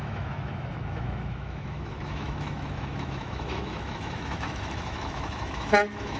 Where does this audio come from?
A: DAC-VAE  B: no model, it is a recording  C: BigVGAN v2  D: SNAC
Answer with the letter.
A